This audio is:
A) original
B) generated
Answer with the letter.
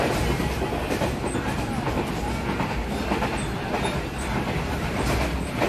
A